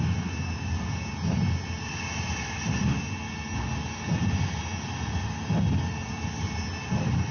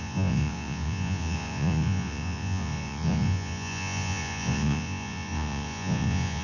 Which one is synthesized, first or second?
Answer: second